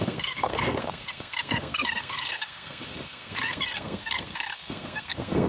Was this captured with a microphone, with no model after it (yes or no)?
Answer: no